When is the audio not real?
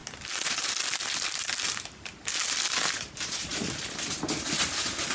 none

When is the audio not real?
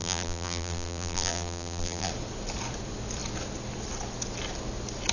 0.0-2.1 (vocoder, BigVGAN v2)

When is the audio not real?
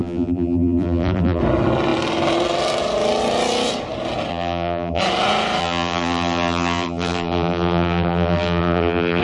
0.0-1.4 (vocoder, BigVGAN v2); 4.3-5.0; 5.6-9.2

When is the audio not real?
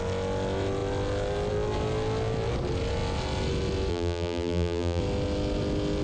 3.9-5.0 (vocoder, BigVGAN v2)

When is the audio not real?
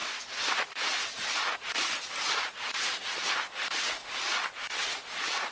0.0-2.8 (vocoder, BigVGAN v2)